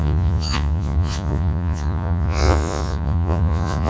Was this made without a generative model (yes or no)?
no